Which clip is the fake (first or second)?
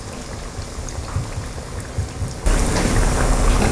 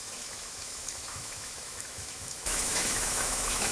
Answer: second